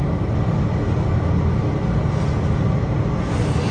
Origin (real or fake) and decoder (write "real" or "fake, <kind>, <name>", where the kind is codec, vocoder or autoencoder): real